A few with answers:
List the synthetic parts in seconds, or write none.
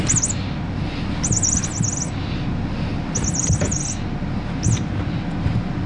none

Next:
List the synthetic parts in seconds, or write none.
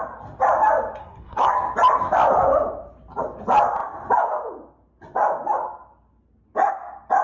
1.0-1.5 (codec, SNAC)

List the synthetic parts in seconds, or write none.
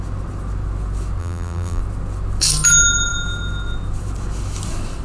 1.2-1.8 (vocoder, BigVGAN v2)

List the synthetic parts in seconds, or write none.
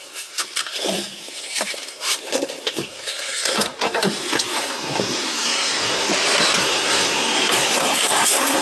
0.0-6.1 (codec, SNAC); 6.6-8.6